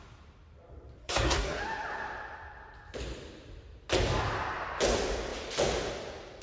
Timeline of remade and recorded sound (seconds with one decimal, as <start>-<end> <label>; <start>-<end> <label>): 0.0-1.0 recorded; 1.0-1.6 remade; 1.6-6.4 recorded